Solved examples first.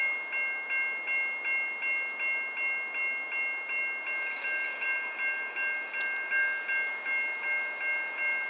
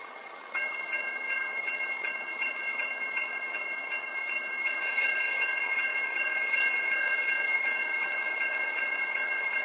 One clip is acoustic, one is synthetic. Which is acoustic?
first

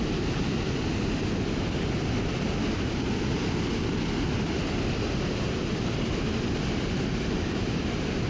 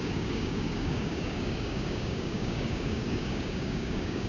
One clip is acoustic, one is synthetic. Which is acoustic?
first